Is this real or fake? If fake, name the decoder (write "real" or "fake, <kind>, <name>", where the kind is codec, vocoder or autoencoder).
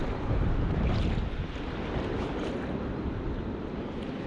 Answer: real